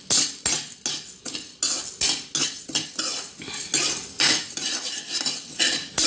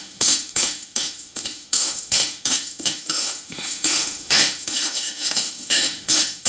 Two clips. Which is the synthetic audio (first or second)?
second